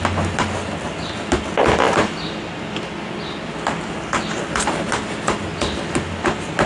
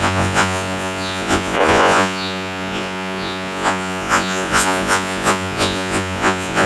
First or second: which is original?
first